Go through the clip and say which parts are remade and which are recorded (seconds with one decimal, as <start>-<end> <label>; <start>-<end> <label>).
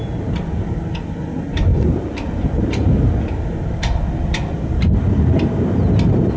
0.0-6.4 recorded